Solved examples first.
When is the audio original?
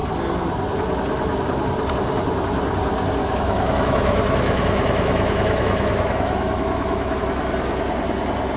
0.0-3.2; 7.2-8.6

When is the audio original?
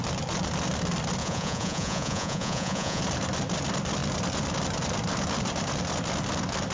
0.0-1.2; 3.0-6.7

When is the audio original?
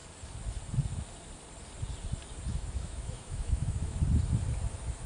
0.0-2.5; 4.0-5.1